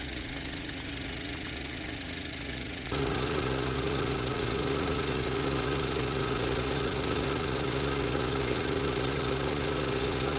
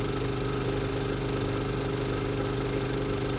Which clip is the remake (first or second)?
first